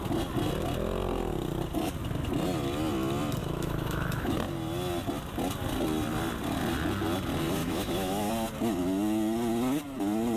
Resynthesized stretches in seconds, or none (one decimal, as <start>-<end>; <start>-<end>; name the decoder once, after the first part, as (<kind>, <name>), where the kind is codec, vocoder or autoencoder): 3.4-4.3 (autoencoder, DAC-VAE); 7.6-8.3